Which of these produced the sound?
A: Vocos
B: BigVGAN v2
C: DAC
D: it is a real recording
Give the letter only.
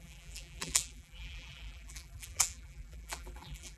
B